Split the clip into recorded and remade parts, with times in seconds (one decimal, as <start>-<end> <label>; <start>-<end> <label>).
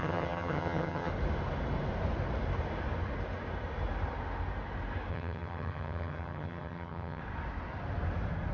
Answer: 0.0-1.1 remade; 1.1-5.1 recorded; 5.1-7.2 remade; 7.2-8.5 recorded